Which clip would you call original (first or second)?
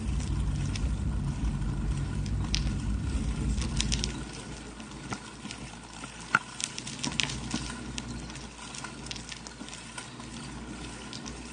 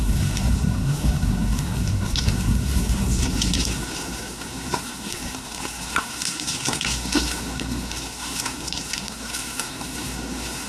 first